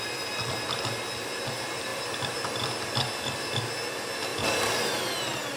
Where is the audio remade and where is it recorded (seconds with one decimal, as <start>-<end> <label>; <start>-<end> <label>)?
0.0-5.6 recorded